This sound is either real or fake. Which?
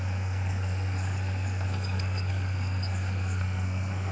fake